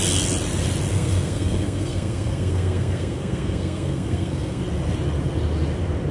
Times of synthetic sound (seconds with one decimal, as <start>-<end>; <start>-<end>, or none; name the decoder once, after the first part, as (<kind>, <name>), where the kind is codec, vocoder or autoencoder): 0.9-4.6 (codec, SNAC)

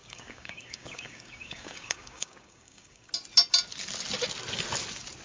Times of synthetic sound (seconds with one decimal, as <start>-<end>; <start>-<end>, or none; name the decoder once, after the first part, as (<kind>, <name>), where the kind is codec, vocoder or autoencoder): 0.0-3.1 (codec, DAC)

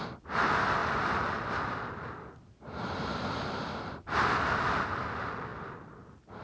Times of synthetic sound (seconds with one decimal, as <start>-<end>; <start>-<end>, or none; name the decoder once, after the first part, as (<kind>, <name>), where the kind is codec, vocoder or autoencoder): none

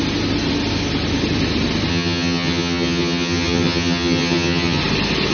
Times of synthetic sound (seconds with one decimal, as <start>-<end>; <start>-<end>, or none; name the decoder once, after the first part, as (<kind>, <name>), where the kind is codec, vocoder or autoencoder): 1.9-4.8 (vocoder, HiFi-GAN)

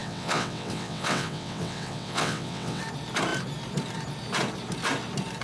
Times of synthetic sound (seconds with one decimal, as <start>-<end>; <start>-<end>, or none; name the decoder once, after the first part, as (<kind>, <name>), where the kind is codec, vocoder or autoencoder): 0.0-2.8 (vocoder, WaveNeXt)

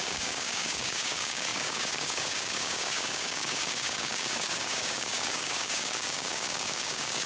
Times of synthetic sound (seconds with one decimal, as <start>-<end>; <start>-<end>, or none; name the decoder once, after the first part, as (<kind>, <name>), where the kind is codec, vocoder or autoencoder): 0.0-7.3 (codec, DAC)

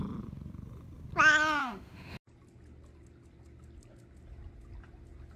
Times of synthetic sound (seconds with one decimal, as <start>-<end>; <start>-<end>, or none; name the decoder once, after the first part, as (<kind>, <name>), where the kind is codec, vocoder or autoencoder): 1.6-2.2 (autoencoder, DAC-VAE)